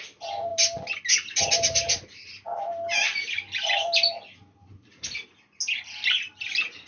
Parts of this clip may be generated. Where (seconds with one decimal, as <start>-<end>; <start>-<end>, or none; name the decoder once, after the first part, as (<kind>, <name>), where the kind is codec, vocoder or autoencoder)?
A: none